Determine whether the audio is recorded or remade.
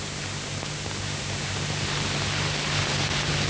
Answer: recorded